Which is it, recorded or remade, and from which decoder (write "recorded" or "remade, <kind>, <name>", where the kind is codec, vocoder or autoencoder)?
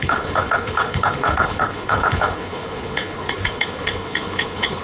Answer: remade, codec, HILCodec